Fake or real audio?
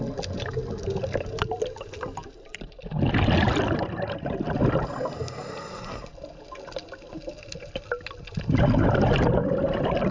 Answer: real